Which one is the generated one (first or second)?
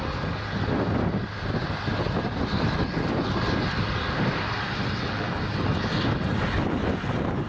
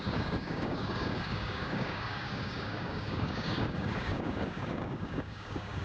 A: second